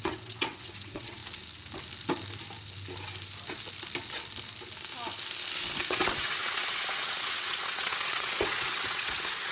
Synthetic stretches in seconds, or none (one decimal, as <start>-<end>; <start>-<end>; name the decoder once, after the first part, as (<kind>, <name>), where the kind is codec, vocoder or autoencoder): 0.0-1.2 (vocoder, WaveNeXt); 5.9-9.5